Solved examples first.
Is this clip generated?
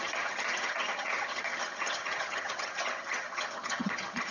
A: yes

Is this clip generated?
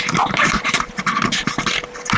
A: no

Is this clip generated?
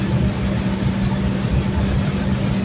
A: no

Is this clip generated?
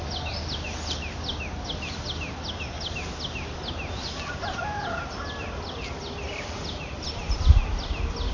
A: no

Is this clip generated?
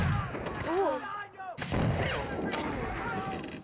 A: no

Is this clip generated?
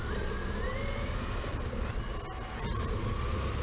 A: no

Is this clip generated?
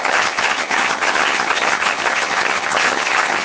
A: yes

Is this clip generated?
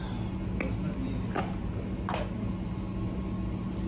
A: no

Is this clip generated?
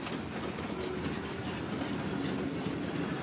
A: no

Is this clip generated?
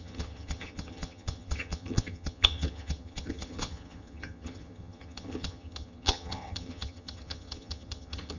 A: yes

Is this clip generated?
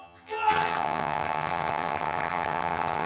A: yes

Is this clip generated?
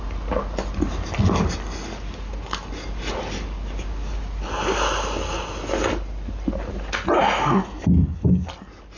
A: no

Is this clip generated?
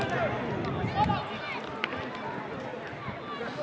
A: no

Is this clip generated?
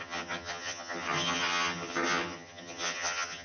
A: yes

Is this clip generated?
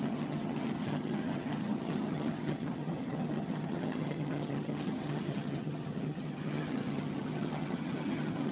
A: yes